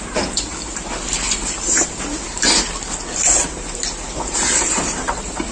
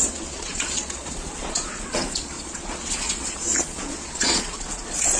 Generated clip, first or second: second